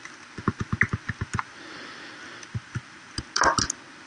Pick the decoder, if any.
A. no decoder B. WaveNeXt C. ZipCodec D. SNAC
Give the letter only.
A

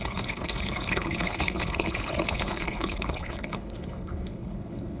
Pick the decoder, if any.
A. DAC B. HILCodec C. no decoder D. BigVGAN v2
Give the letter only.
B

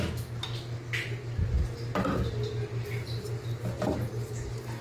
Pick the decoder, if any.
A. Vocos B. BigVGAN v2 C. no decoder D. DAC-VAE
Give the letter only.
C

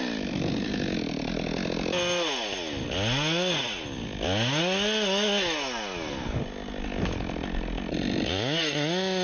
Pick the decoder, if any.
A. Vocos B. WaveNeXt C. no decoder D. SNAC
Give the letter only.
C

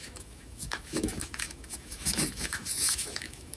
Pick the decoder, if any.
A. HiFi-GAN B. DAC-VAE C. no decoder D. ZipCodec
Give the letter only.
B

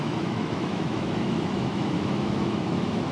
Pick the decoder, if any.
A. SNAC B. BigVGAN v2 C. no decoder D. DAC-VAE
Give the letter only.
D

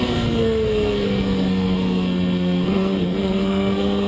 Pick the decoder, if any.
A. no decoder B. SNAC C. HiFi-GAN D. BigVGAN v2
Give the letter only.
B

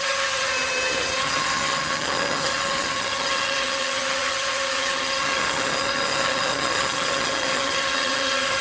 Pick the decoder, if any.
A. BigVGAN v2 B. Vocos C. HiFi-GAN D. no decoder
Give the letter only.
C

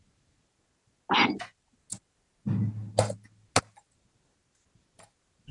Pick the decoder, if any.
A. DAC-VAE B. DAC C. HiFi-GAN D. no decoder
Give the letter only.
D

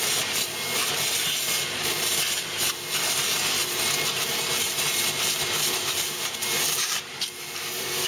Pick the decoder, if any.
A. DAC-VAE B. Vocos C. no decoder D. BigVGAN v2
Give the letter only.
D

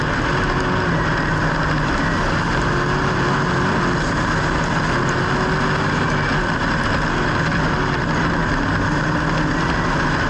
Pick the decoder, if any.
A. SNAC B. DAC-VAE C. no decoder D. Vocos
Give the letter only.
C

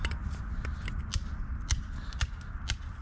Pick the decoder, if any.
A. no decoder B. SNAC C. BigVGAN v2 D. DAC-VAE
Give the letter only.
A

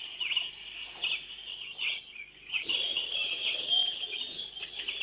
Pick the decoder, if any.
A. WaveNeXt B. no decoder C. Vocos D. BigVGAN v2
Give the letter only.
B